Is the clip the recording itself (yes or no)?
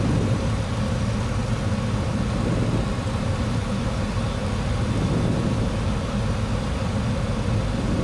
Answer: yes